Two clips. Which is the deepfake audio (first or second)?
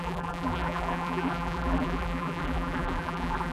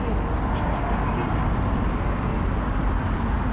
first